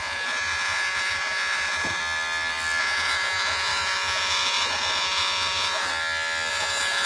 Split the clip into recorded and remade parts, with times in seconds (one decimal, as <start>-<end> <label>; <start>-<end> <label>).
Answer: 0.0-2.0 remade; 2.0-2.8 recorded; 2.8-5.9 remade; 5.9-6.5 recorded; 6.5-7.1 remade